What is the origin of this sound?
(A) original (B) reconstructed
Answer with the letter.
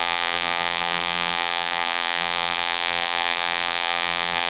B